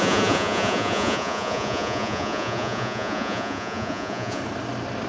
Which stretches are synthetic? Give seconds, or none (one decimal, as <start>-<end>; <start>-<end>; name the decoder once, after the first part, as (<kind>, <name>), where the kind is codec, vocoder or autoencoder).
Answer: 0.0-4.4 (vocoder, Vocos)